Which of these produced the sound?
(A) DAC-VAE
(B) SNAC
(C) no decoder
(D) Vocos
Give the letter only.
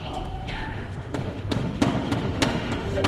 A